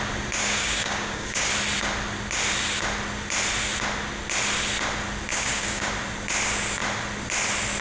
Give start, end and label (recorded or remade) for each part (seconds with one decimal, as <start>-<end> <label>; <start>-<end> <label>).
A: 0.0-0.4 recorded; 0.4-1.5 remade; 1.5-5.3 recorded; 5.3-5.9 remade; 5.9-7.8 recorded